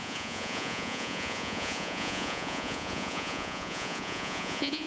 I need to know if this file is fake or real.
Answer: fake